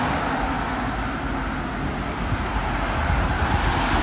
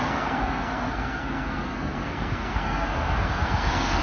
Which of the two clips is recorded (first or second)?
first